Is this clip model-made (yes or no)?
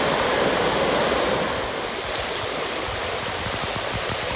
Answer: no